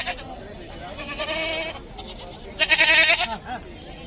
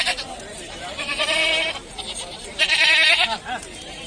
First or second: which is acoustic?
first